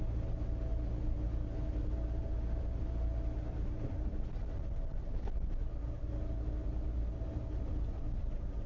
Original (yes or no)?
yes